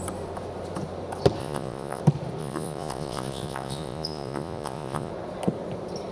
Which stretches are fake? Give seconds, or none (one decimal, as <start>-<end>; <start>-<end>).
1.4-2.0; 2.4-5.1